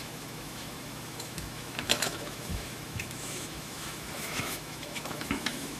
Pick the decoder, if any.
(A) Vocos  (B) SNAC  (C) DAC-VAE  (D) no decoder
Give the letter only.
C